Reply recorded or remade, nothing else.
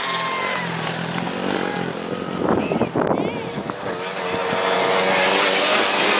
recorded